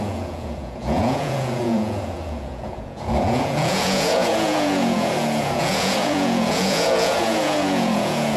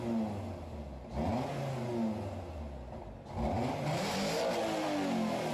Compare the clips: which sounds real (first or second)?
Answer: second